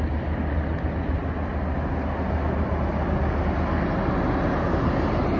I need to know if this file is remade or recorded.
recorded